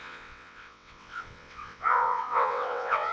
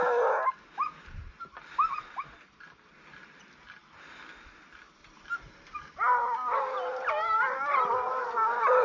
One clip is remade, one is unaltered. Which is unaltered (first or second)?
second